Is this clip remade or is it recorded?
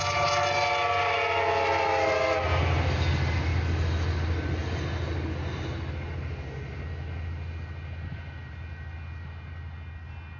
recorded